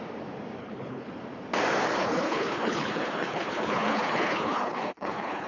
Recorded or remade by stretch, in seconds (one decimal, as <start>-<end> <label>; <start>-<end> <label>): 0.0-0.6 recorded; 0.6-1.1 remade; 1.1-2.0 recorded; 2.0-5.5 remade